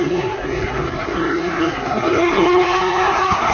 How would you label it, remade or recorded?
remade